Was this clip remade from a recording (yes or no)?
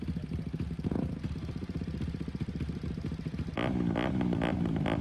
no